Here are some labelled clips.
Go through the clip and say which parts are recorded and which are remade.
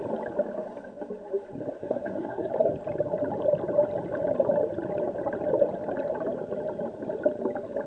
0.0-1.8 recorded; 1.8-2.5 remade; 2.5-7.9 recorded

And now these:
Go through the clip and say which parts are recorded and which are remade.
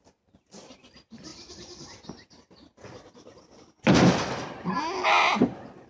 0.0-5.9 recorded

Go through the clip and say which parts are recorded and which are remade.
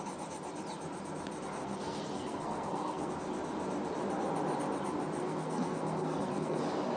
0.0-1.6 recorded; 1.6-3.1 remade; 3.1-5.2 recorded; 5.2-6.6 remade; 6.6-7.0 recorded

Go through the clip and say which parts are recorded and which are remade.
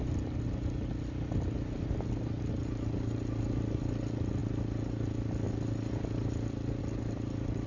0.0-7.7 recorded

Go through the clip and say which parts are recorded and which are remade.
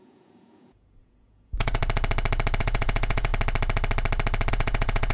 0.0-1.8 remade; 1.8-2.6 recorded; 2.6-3.3 remade; 3.3-4.5 recorded; 4.5-5.1 remade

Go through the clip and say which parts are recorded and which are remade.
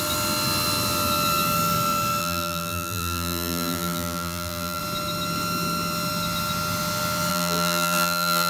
0.0-2.2 recorded; 2.2-4.8 remade; 4.8-7.3 recorded; 7.3-8.5 remade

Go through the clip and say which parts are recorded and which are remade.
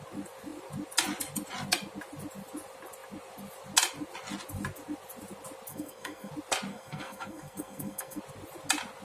0.0-5.7 recorded; 5.7-6.3 remade; 6.3-6.7 recorded; 6.7-8.2 remade; 8.2-9.0 recorded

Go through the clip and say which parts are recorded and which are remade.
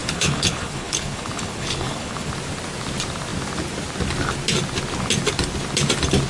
0.0-2.3 remade; 2.3-6.3 recorded